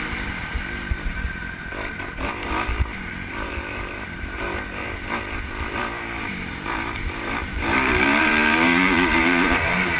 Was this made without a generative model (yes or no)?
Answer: no